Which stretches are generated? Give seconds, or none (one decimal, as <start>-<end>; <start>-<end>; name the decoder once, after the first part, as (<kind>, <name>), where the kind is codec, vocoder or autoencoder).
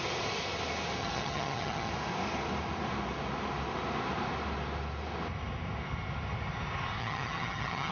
1.0-1.9 (vocoder, HiFi-GAN); 7.0-7.9